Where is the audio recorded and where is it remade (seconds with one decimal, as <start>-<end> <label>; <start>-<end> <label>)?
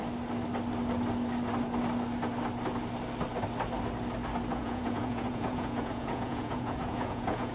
0.0-4.5 recorded; 4.5-7.5 remade